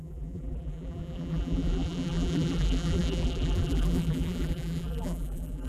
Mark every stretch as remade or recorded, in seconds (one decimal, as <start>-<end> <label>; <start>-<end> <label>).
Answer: 0.0-5.7 remade

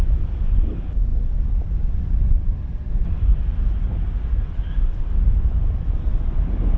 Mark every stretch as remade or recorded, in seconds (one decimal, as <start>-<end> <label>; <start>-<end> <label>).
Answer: 0.0-6.8 recorded

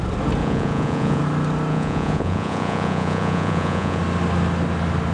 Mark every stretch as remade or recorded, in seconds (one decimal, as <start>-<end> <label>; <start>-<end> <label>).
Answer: 0.0-0.4 recorded; 0.4-1.2 remade; 1.2-1.7 recorded; 1.7-4.0 remade; 4.0-5.1 recorded

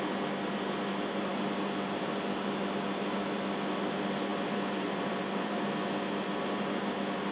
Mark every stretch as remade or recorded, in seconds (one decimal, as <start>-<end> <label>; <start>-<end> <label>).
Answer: 0.0-4.3 recorded; 4.3-5.8 remade; 5.8-7.3 recorded